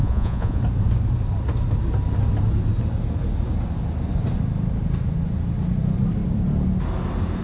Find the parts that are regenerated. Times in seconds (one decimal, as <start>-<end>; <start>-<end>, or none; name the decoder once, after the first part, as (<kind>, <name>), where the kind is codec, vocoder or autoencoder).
0.0-0.6 (vocoder, Vocos)